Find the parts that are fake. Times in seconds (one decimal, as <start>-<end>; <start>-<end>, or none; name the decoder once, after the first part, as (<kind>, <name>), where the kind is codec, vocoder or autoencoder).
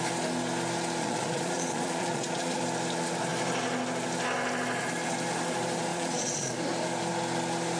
1.0-2.6 (vocoder, Vocos); 5.9-6.5